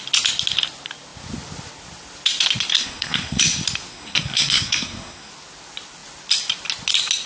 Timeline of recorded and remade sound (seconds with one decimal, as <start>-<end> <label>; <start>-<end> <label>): 0.0-2.8 recorded; 2.8-3.4 remade; 3.4-3.9 recorded; 3.9-5.3 remade; 5.3-7.3 recorded